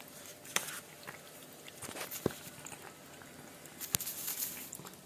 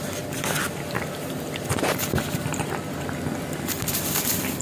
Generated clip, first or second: second